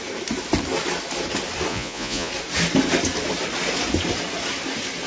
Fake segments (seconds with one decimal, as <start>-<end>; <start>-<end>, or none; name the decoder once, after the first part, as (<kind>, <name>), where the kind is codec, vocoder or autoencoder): 1.7-2.3 (vocoder, Vocos)